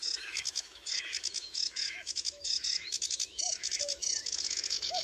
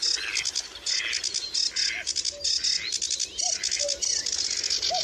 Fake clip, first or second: first